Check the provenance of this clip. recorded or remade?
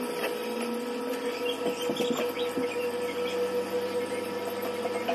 recorded